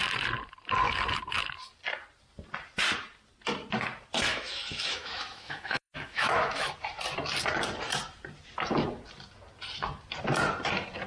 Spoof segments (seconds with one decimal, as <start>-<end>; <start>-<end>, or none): 4.3-6.7